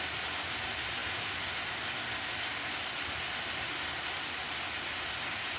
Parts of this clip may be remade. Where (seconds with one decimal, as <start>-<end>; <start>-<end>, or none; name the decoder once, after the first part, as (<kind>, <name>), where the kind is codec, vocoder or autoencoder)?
none